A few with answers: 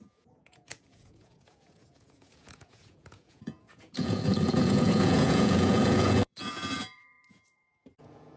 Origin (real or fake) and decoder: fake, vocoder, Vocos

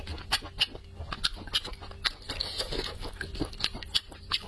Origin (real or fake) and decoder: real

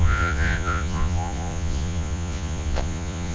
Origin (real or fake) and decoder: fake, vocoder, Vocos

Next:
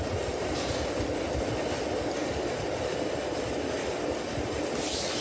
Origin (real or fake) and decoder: real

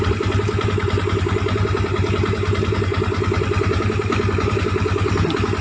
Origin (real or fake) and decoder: fake, vocoder, BigVGAN v2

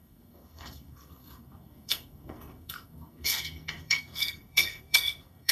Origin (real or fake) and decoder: fake, codec, SNAC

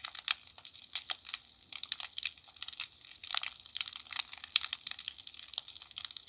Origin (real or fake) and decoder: fake, vocoder, BigVGAN v2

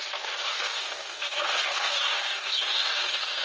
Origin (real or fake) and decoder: fake, codec, DAC